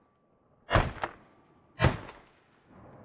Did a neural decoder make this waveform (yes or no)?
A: no